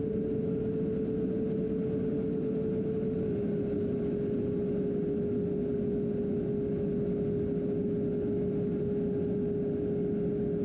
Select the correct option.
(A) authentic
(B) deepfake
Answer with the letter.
A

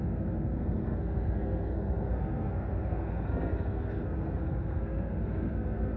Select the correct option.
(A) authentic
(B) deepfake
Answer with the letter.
B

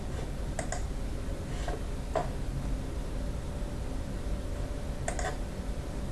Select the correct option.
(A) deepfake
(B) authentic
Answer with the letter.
B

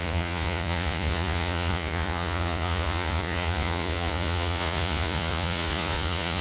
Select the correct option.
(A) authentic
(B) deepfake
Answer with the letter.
B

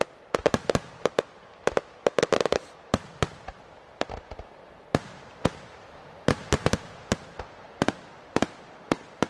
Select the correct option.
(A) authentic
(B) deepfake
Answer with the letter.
B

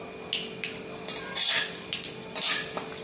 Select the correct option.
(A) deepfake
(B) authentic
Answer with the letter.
B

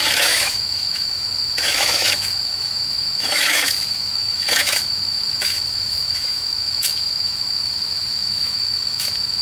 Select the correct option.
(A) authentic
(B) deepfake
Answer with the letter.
B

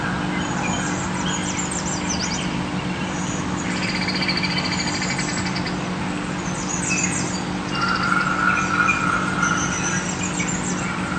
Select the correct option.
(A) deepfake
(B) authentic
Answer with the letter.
B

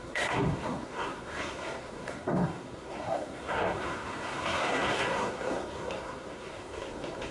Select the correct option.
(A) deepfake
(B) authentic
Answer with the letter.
A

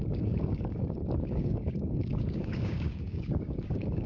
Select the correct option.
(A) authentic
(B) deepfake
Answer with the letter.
B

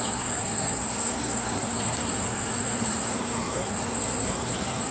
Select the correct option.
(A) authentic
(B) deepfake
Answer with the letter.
B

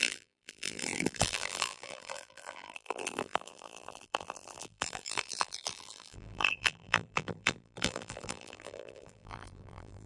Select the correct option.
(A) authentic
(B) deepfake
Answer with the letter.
B